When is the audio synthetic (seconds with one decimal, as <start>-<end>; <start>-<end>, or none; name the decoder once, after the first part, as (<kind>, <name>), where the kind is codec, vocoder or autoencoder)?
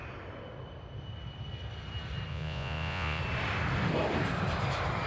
2.3-3.2 (vocoder, Vocos)